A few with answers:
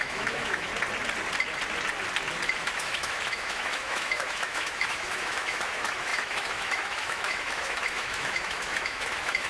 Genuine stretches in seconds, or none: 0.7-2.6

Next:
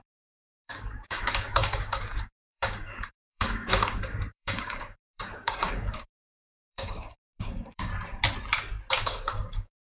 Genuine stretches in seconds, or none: 7.9-8.9

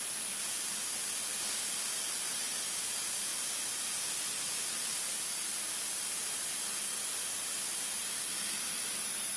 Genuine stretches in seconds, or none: 0.0-9.4